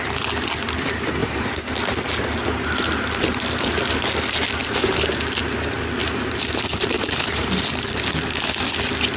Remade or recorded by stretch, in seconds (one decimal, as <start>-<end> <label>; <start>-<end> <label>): 0.0-1.2 recorded; 1.2-1.7 remade; 1.7-6.0 recorded; 6.0-8.0 remade; 8.0-9.2 recorded